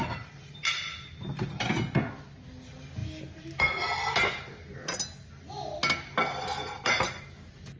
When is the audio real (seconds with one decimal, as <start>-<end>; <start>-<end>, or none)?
0.0-7.8